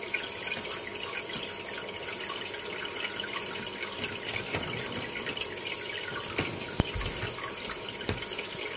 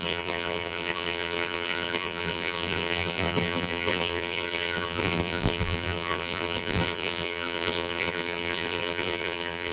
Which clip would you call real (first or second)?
first